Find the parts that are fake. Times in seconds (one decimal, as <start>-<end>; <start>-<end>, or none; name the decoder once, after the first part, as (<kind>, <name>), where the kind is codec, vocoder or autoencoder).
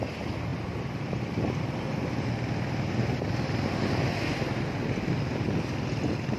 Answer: none